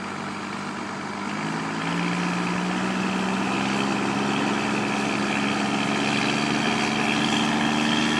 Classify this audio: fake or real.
real